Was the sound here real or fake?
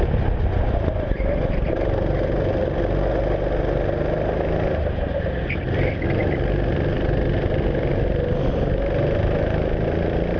real